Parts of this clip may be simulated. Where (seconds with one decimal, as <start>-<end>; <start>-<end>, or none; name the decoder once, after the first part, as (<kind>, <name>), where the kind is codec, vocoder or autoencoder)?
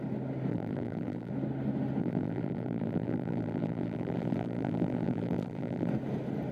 0.5-1.3 (vocoder, BigVGAN v2); 2.0-5.9